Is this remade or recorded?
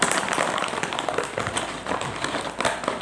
remade